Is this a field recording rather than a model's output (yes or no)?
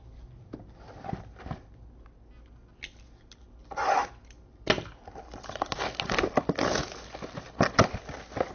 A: yes